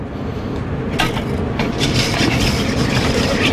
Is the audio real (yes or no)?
no